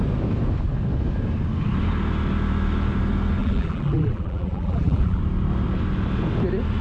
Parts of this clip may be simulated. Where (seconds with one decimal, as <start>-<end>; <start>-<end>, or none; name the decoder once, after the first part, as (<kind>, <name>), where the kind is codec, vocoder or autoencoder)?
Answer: 3.4-5.2 (vocoder, BigVGAN v2)